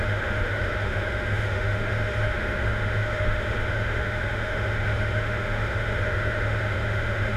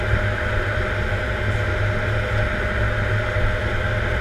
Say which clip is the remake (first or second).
first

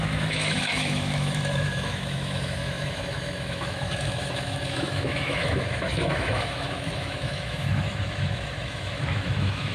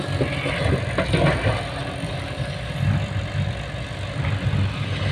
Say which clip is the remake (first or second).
first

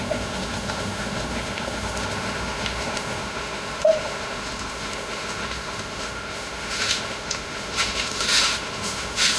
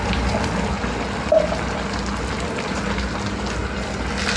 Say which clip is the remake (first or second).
first